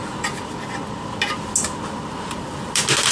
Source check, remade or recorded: recorded